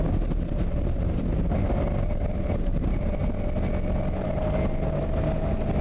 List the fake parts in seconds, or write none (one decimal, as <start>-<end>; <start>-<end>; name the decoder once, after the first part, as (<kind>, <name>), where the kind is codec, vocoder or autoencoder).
0.0-3.2 (vocoder, BigVGAN v2); 4.2-5.8